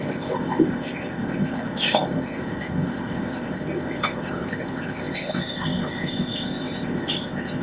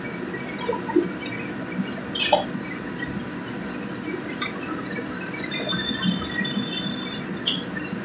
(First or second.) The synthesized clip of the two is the first